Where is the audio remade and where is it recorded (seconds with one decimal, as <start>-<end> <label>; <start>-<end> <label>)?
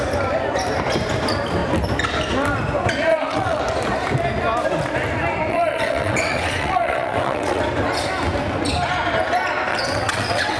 0.0-3.1 recorded; 3.1-3.6 remade; 3.6-5.5 recorded; 5.5-7.6 remade; 7.6-9.7 recorded; 9.7-10.6 remade